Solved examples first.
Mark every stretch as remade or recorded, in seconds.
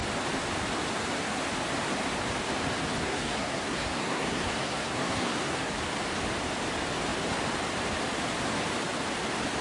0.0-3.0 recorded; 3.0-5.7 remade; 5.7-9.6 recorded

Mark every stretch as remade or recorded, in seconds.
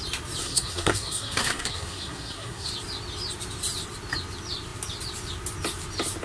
0.0-0.4 recorded; 0.4-2.7 remade; 2.7-6.2 recorded